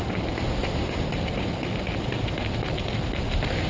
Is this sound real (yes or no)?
yes